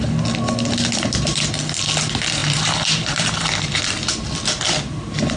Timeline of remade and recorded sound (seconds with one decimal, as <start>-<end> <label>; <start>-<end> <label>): 0.0-5.4 recorded